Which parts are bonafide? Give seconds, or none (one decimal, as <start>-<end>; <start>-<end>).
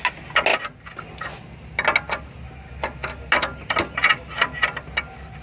0.0-0.5; 1.0-5.4